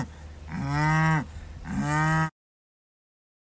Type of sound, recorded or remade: recorded